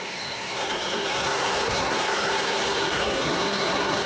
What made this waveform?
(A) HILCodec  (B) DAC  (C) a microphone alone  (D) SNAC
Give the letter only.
D